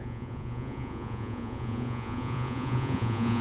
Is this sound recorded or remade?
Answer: remade